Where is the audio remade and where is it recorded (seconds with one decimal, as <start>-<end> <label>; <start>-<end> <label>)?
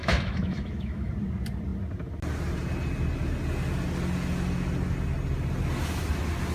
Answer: 0.0-1.1 remade; 1.1-6.5 recorded